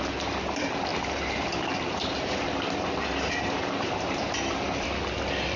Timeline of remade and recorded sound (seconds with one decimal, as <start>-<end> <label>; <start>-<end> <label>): 0.0-0.9 recorded; 0.9-4.3 remade; 4.3-5.6 recorded